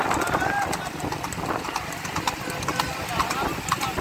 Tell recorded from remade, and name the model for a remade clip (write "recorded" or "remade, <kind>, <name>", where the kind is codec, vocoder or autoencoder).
recorded